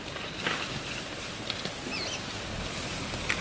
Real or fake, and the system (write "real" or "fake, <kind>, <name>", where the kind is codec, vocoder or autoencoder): real